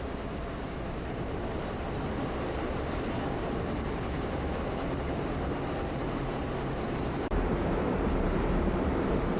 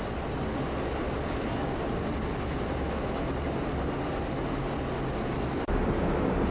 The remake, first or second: first